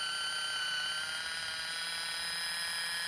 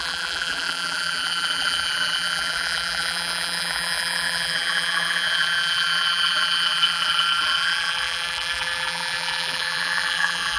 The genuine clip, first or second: first